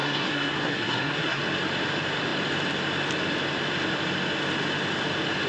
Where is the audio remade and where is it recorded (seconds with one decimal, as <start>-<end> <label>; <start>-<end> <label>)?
0.0-1.4 remade; 1.4-5.5 recorded